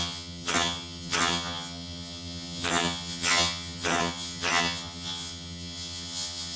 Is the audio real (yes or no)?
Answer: no